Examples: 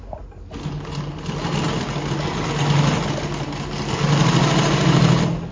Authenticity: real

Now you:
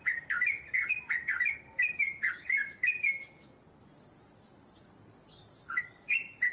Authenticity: real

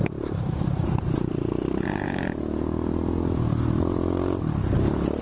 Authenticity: real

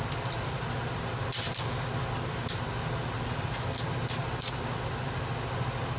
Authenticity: real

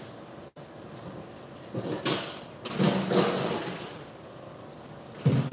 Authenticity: real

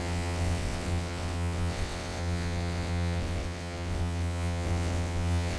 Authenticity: fake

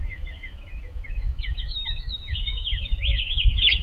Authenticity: fake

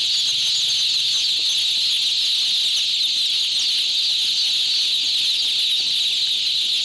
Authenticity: real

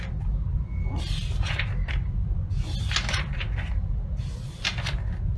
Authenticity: real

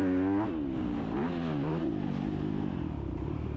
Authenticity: real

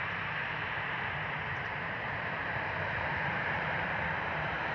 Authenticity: fake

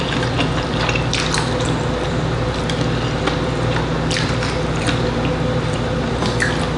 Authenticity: fake